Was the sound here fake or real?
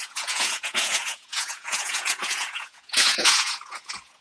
fake